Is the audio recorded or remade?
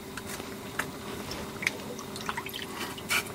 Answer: recorded